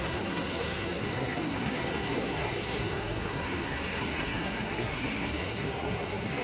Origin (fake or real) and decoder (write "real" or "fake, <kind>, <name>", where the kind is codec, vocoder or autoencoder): fake, codec, SNAC